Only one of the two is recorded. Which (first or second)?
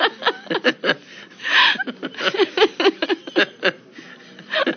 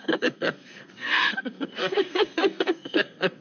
first